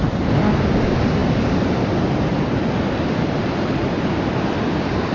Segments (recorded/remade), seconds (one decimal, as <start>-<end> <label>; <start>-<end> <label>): 0.0-5.1 recorded